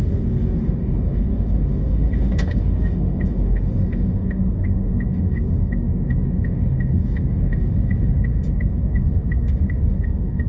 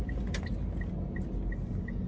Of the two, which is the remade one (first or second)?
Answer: first